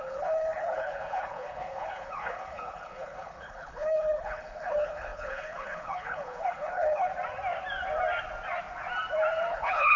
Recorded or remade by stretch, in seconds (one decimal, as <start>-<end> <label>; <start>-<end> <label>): 0.0-7.1 remade; 7.1-9.5 recorded; 9.5-10.0 remade